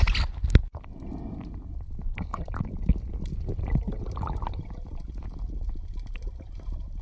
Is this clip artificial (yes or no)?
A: no